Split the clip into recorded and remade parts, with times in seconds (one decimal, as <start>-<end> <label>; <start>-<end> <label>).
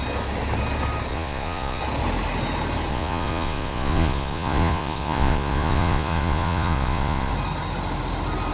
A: 0.0-1.1 recorded; 1.1-1.8 remade; 1.8-2.9 recorded; 2.9-7.3 remade; 7.3-8.5 recorded